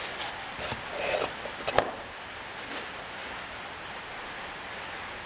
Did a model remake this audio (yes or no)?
no